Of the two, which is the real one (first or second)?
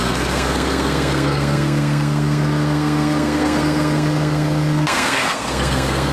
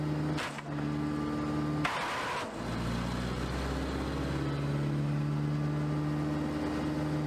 second